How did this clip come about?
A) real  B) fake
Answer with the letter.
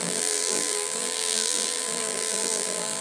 B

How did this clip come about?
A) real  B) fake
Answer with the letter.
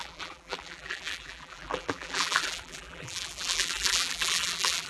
B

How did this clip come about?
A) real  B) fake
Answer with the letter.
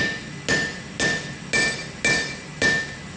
A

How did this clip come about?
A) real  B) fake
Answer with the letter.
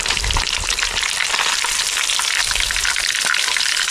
B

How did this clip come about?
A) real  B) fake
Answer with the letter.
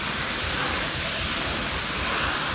A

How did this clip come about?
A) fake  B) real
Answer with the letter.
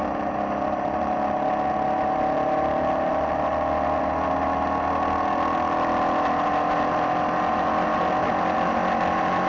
B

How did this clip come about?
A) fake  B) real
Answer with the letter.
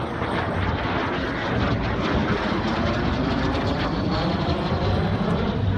A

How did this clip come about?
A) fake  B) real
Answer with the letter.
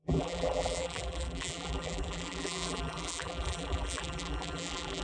A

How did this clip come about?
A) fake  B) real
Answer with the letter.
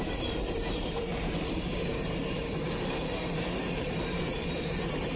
A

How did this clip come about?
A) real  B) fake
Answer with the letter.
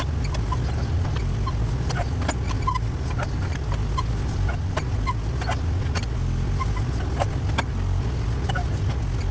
A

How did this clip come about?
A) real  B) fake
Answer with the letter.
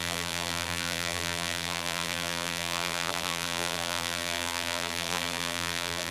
B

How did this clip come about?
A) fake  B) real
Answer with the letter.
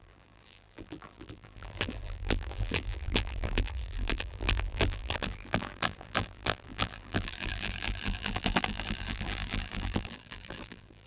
A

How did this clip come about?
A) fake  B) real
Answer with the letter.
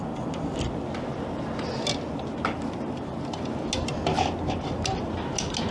B